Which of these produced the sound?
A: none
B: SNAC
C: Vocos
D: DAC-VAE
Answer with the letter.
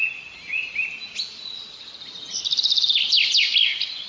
A